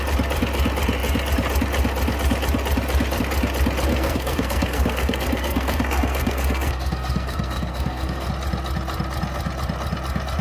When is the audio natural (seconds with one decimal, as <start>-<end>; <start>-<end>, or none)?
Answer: 0.0-3.9; 8.3-10.4